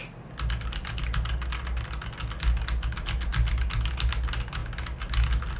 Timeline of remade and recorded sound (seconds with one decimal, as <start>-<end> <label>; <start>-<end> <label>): 0.0-5.6 recorded